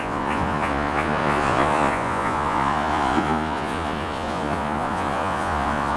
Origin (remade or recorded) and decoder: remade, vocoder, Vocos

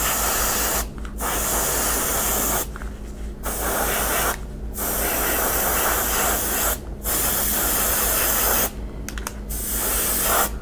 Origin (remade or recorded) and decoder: recorded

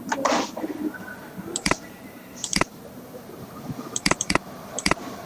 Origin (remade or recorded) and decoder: remade, vocoder, BigVGAN v2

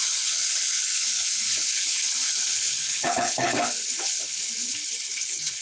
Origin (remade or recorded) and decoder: remade, codec, HILCodec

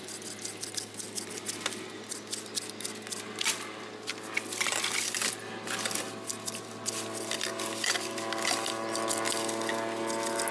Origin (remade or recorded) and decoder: recorded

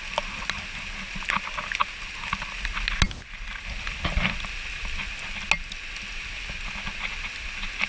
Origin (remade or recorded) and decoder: recorded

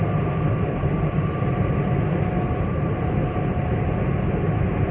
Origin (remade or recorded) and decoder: recorded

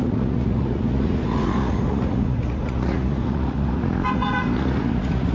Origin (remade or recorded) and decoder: remade, vocoder, Vocos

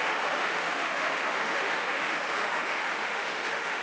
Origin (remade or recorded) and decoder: remade, autoencoder, DAC-VAE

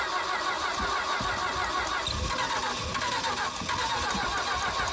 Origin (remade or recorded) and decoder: recorded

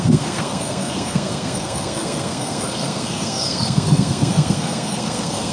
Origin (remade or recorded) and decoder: remade, codec, SNAC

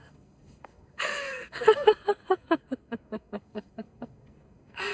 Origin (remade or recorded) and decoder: remade, codec, SNAC